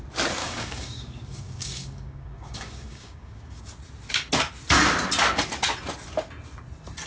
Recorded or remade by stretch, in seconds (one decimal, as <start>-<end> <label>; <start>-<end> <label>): 0.0-0.4 recorded; 0.4-3.6 remade; 3.6-7.1 recorded